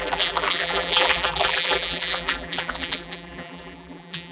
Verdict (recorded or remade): remade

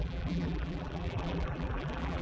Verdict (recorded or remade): remade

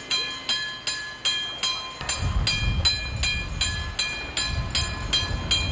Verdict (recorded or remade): recorded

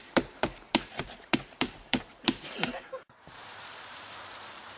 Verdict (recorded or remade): remade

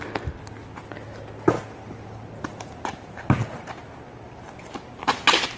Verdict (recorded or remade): recorded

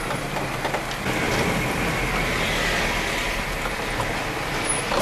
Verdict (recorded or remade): recorded